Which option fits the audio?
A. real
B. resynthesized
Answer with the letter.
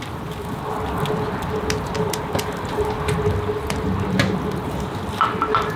A